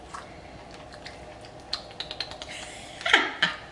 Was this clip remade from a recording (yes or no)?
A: no